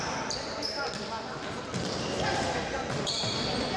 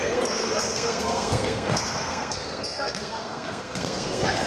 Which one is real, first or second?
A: first